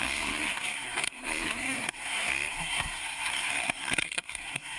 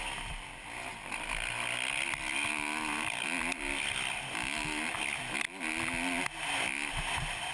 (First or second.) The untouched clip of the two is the second